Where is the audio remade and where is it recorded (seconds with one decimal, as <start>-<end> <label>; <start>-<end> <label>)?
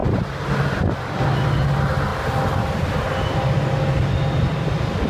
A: 0.0-5.1 recorded